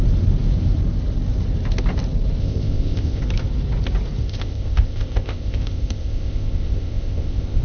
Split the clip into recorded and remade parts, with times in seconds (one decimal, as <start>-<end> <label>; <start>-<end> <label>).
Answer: 0.0-2.4 recorded; 2.4-3.2 remade; 3.2-4.2 recorded; 4.2-7.6 remade